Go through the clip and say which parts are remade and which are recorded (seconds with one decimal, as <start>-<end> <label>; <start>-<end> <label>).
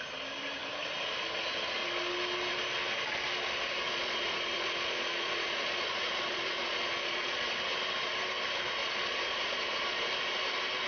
0.0-3.8 recorded; 3.8-7.5 remade; 7.5-8.8 recorded; 8.8-10.1 remade; 10.1-10.9 recorded